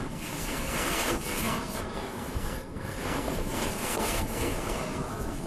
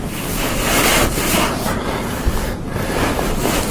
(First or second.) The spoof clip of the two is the first